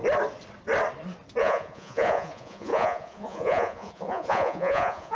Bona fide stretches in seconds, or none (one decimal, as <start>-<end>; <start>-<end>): 0.0-1.4